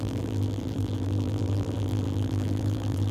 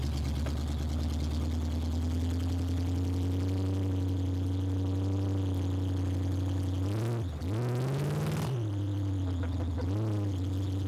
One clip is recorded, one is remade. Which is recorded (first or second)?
second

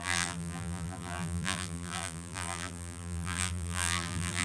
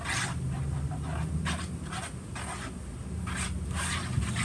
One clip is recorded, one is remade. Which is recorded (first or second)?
second